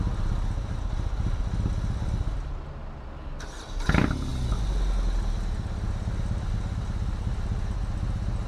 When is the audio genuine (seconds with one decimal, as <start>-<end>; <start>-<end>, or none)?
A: 0.0-8.5